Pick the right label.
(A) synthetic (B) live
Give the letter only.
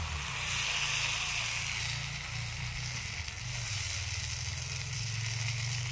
B